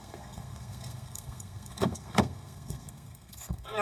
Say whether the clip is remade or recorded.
remade